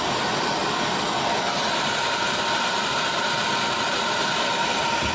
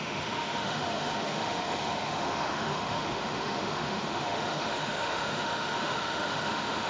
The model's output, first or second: second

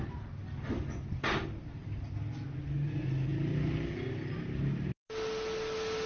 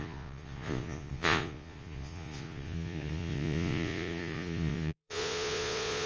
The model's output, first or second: second